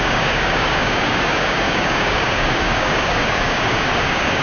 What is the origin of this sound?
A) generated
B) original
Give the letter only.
A